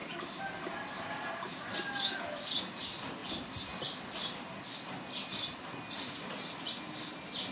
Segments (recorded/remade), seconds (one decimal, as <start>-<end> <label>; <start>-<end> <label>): 0.0-7.5 recorded